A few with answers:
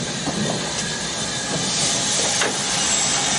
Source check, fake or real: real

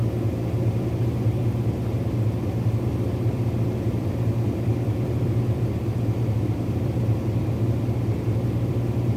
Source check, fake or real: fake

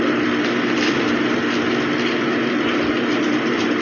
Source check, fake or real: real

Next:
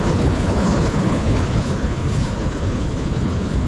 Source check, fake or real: fake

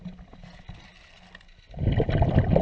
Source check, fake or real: real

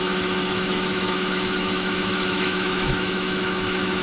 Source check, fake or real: fake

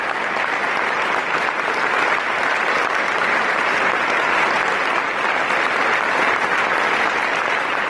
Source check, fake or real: real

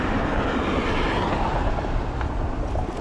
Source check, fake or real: real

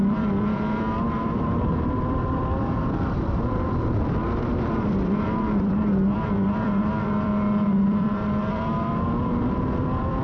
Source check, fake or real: fake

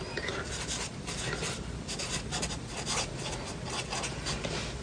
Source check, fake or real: real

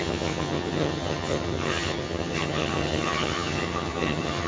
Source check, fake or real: fake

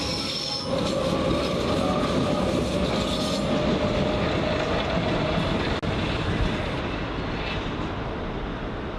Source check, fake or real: real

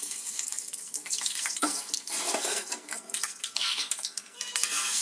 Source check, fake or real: fake